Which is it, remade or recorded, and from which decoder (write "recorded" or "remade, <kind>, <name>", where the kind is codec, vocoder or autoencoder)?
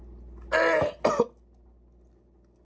recorded